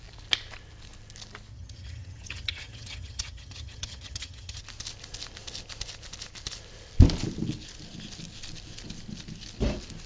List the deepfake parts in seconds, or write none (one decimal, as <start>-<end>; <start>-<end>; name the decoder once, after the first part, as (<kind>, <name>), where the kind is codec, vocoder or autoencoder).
1.5-4.6 (vocoder, HiFi-GAN)